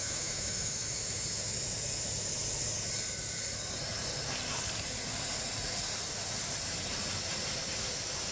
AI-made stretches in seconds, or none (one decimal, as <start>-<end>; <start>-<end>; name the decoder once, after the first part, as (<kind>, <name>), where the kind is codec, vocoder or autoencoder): 0.0-1.5 (autoencoder, DAC-VAE)